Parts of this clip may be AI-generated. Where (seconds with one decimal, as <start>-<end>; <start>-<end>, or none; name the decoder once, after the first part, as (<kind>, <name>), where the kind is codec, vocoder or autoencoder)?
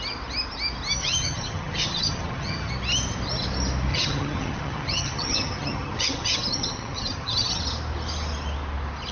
1.0-2.7 (vocoder, HiFi-GAN); 3.9-7.6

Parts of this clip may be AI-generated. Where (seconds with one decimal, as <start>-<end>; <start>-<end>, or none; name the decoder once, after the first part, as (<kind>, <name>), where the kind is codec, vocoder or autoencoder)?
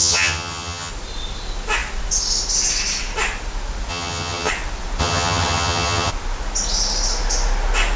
0.0-0.9 (vocoder, HiFi-GAN); 3.9-4.5; 5.0-6.1